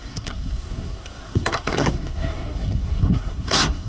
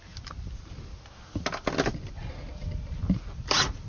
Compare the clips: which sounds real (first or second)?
second